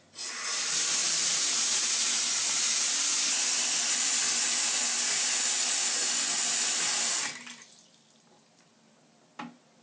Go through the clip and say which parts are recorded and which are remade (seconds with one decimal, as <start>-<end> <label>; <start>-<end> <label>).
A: 0.0-1.0 recorded; 1.0-2.8 remade; 2.8-9.8 recorded